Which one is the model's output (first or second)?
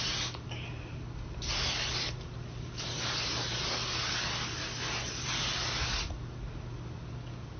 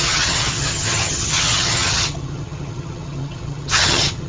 second